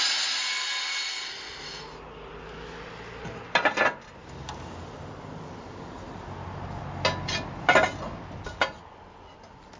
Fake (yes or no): no